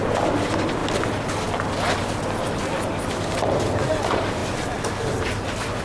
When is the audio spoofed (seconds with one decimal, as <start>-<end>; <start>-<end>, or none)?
none